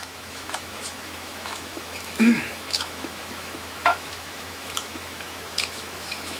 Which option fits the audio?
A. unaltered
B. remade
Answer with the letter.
B